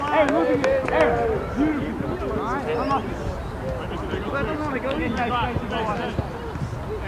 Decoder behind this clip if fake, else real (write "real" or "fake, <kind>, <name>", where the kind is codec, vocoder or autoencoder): real